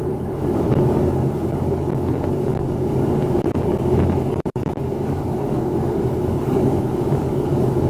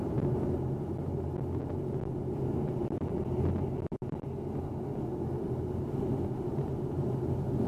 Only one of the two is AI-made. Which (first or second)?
first